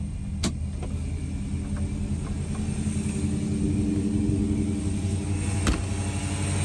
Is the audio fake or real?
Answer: real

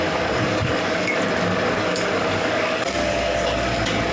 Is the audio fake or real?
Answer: fake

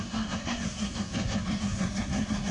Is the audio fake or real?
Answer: fake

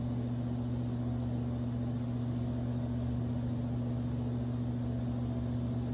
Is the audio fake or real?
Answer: real